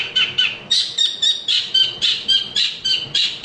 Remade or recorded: recorded